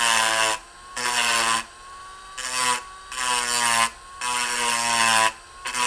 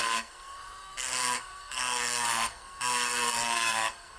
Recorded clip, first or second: first